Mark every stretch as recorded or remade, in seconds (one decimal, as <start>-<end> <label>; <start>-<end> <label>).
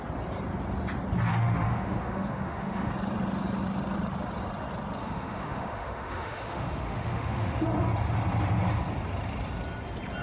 0.0-1.3 recorded; 1.3-2.9 remade; 2.9-5.0 recorded; 5.0-7.6 remade; 7.6-10.2 recorded